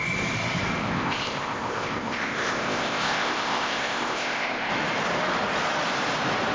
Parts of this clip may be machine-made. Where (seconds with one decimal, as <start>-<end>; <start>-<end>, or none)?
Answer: 0.8-4.7